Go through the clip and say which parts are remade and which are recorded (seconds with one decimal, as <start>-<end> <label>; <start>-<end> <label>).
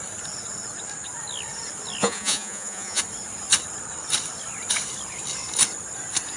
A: 0.0-2.0 recorded; 2.0-3.0 remade; 3.0-6.4 recorded